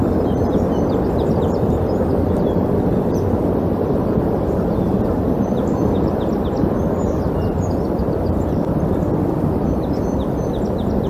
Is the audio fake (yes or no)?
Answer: no